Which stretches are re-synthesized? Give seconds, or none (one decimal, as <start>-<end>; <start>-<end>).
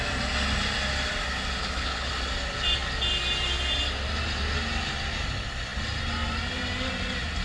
1.6-2.1